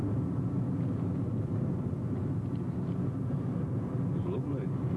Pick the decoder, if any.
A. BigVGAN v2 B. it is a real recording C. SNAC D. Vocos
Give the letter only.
B